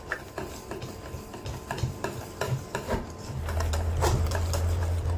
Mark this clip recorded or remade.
recorded